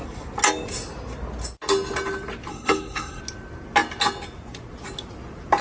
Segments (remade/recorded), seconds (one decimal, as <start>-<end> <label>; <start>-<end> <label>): 0.0-2.5 recorded; 2.5-3.2 remade; 3.2-5.6 recorded